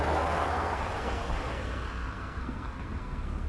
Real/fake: fake